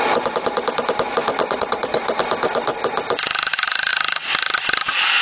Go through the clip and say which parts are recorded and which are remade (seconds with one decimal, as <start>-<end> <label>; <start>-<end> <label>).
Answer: 0.0-1.4 recorded; 1.4-2.2 remade; 2.2-5.2 recorded